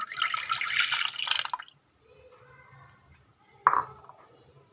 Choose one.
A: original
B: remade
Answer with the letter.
A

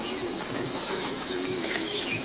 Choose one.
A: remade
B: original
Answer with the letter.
A